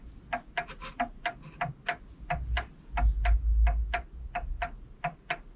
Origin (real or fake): real